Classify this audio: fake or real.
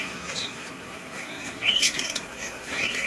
fake